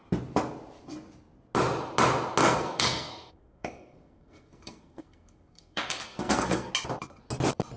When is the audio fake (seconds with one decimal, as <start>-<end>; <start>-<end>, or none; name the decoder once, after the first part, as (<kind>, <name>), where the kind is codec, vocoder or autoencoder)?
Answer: 2.4-6.7 (codec, SNAC)